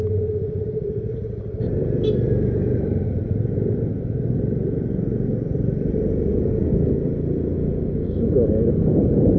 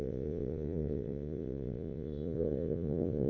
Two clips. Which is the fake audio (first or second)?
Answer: second